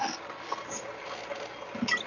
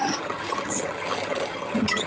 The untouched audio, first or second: first